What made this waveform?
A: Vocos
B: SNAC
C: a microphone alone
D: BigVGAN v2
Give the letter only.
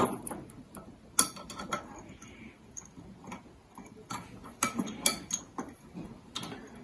C